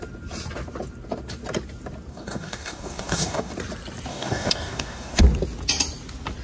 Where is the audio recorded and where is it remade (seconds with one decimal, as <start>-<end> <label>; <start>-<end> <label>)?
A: 0.0-2.1 recorded; 2.1-3.5 remade; 3.5-4.1 recorded; 4.1-5.2 remade; 5.2-6.4 recorded